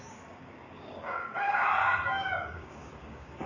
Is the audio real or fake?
fake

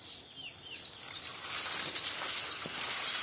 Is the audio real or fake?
real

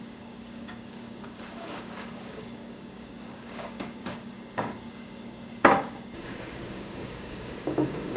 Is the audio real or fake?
fake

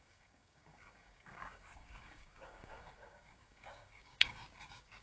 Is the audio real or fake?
fake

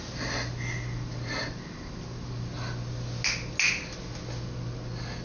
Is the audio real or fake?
real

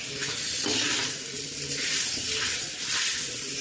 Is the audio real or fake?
real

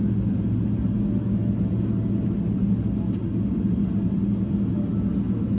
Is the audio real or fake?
real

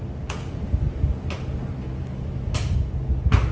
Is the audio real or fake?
real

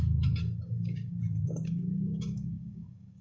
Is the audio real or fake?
fake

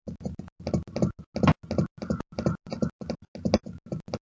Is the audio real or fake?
real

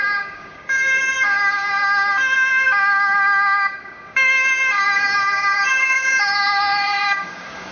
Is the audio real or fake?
fake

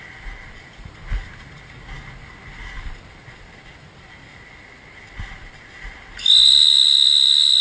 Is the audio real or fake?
real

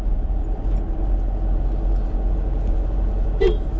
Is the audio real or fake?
real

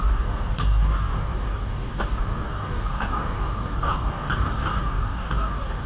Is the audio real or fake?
fake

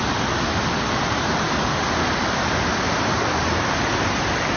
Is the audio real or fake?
real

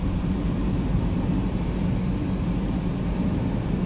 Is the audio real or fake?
real